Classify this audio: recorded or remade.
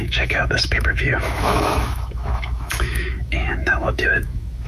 remade